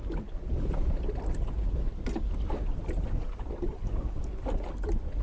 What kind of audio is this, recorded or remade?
recorded